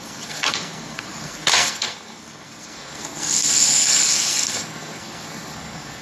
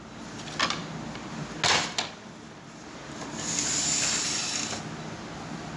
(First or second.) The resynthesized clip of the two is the first